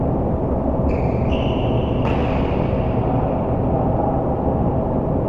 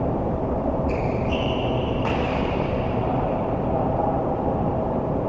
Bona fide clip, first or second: first